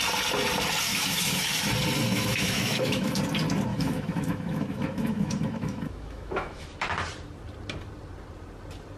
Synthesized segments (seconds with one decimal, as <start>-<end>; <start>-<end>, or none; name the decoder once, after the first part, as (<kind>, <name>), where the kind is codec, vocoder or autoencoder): 0.9-1.7 (autoencoder, DAC-VAE); 2.1-3.2; 3.7-6.7